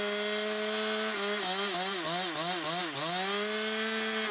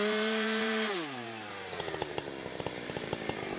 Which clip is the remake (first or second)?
second